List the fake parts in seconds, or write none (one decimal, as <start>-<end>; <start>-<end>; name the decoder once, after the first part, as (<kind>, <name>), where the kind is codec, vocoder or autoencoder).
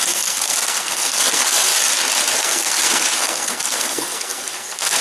0.0-1.7 (codec, SNAC); 2.4-5.0